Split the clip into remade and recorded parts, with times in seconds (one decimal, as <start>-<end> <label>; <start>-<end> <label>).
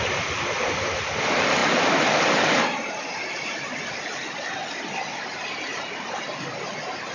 0.0-1.6 recorded; 1.6-5.8 remade; 5.8-7.1 recorded